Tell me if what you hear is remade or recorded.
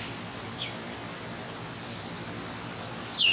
recorded